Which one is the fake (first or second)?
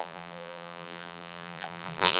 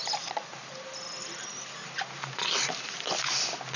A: first